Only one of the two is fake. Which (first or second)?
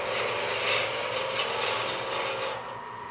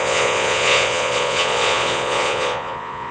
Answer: second